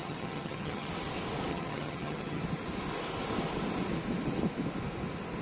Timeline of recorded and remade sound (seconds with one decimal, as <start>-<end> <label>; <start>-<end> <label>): 0.0-0.9 remade; 0.9-1.5 recorded; 1.5-2.4 remade; 2.4-5.4 recorded